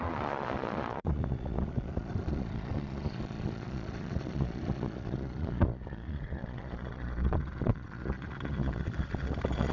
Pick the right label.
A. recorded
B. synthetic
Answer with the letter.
B